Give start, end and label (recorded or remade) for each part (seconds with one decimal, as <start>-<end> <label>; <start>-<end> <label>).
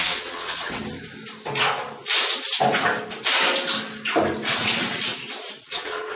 0.0-0.8 remade; 0.8-4.5 recorded; 4.5-5.1 remade; 5.1-5.6 recorded; 5.6-6.2 remade